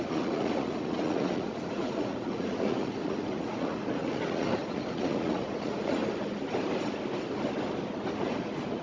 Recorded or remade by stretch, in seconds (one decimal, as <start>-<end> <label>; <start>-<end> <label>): 0.0-6.0 remade; 6.0-8.1 recorded; 8.1-8.8 remade